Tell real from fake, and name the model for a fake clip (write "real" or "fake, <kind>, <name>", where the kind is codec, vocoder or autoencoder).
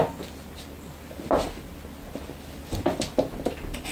real